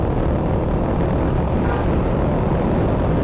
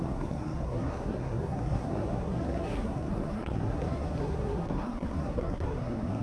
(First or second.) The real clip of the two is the first